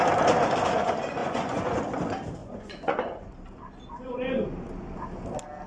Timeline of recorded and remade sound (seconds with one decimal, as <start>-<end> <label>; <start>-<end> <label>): 0.0-1.2 recorded; 1.2-1.8 remade; 1.8-2.4 recorded; 2.4-3.3 remade; 3.3-5.7 recorded